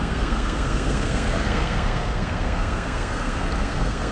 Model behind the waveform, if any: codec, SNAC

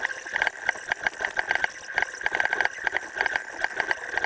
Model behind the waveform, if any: none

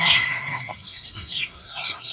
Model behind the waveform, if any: codec, SNAC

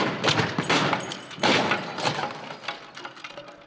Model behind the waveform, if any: none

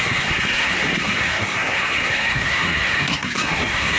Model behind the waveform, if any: codec, SNAC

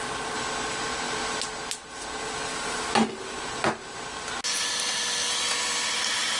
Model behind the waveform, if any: none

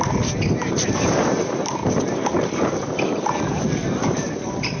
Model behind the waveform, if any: none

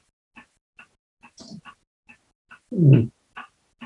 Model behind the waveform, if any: none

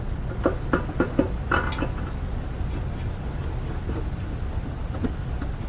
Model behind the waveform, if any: none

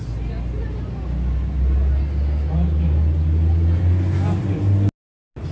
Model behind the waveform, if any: none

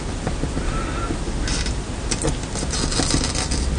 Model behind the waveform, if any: none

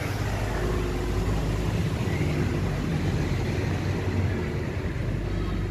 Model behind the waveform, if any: none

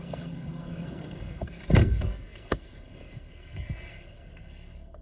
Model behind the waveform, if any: codec, SNAC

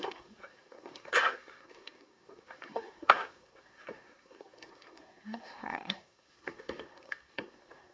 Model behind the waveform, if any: codec, SNAC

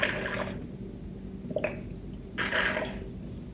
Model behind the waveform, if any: none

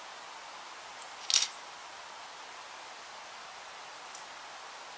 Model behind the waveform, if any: none